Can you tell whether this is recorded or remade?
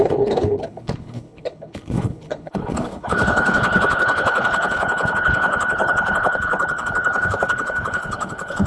remade